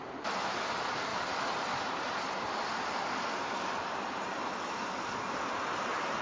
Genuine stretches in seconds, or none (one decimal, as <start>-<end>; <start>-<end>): 0.0-6.2